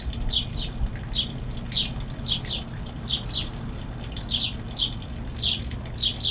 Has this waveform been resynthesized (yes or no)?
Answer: no